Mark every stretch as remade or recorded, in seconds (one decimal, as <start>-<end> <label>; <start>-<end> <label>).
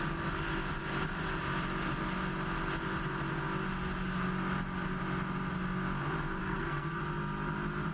0.0-6.4 recorded; 6.4-7.0 remade; 7.0-7.9 recorded